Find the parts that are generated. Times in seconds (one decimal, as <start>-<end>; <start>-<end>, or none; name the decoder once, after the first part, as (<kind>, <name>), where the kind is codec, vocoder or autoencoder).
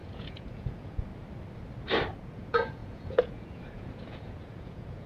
0.0-1.1 (vocoder, Vocos); 2.2-5.1